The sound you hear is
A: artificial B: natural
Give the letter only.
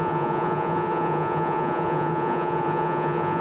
A